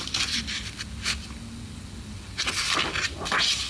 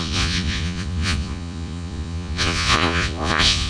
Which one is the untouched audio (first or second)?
first